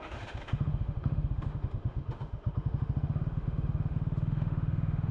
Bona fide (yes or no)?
no